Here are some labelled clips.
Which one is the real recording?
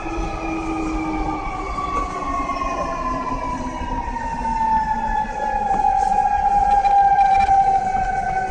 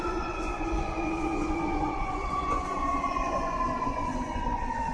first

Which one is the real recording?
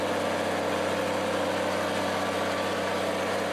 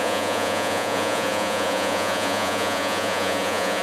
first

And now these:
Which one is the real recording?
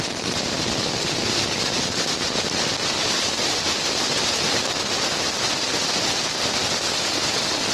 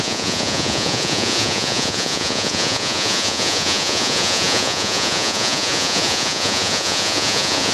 first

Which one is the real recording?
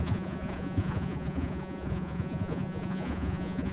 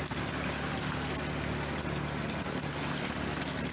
second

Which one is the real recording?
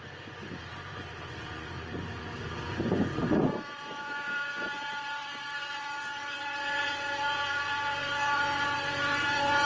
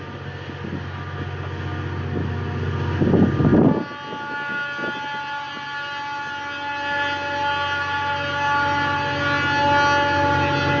second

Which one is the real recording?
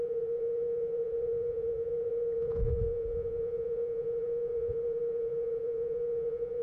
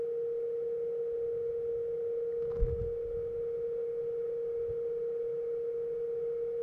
second